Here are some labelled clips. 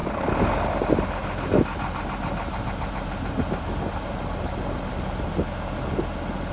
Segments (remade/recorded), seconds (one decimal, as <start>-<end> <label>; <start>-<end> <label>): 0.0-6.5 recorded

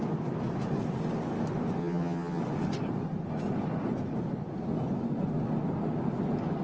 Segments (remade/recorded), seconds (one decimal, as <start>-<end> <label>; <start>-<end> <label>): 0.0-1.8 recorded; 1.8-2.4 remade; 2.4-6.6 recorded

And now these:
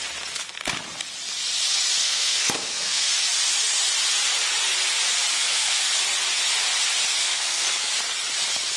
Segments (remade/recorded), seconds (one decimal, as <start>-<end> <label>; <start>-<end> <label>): 0.0-2.0 recorded; 2.0-3.1 remade; 3.1-5.3 recorded; 5.3-5.8 remade; 5.8-7.2 recorded; 7.2-7.9 remade; 7.9-8.8 recorded